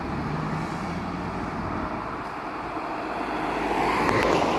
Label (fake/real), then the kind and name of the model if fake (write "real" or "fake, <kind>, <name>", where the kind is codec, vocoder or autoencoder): real